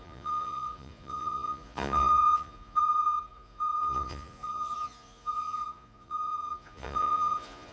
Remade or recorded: remade